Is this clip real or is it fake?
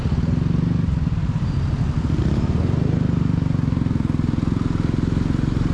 real